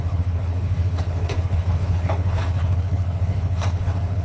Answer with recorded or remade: remade